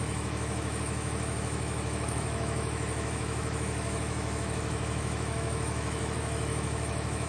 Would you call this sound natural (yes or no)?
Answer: no